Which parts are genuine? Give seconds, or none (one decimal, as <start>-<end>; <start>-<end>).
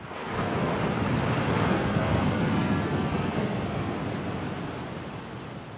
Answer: 0.7-1.5; 4.0-5.8